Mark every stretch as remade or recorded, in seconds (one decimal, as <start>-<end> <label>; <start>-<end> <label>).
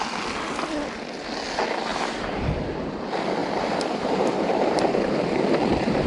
0.0-1.9 recorded; 1.9-2.5 remade; 2.5-3.4 recorded; 3.4-6.1 remade